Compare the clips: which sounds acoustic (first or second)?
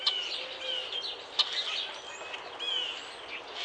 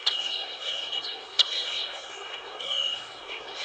first